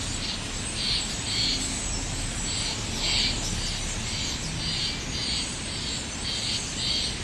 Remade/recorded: recorded